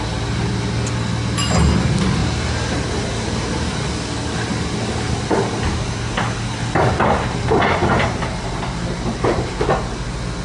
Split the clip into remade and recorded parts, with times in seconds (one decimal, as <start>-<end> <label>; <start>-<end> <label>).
0.0-2.2 recorded; 2.2-3.9 remade; 3.9-7.8 recorded; 7.8-9.6 remade; 9.6-10.4 recorded